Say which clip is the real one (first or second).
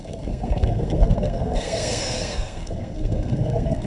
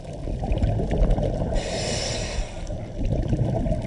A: second